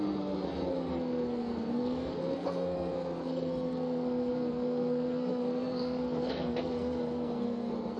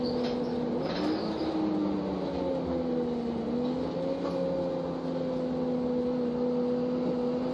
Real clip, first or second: second